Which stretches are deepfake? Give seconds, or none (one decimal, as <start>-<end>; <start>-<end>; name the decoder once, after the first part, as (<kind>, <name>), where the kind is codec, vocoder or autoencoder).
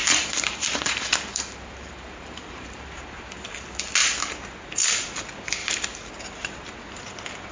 0.0-3.5 (vocoder, BigVGAN v2); 5.6-6.1